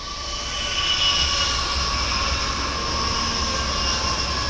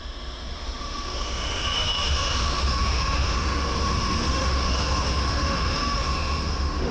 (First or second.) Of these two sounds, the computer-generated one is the second